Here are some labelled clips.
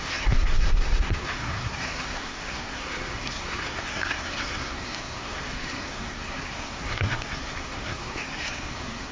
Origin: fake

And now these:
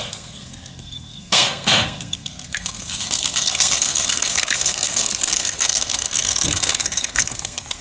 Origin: fake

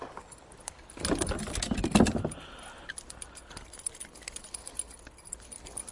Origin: real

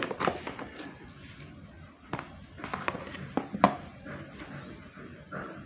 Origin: real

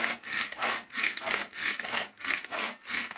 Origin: fake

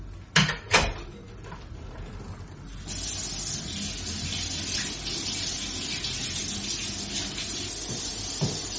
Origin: real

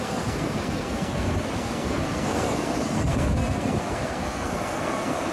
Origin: fake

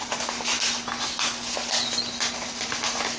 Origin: real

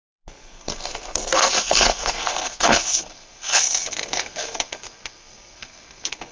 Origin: fake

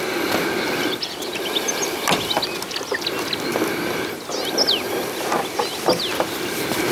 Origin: real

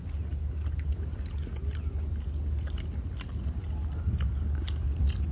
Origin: real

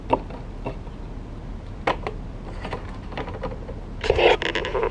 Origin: real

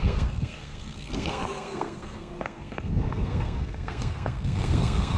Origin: fake